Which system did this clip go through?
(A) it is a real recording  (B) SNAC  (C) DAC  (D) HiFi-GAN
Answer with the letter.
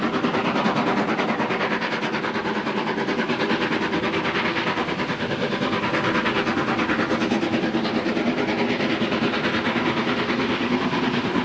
A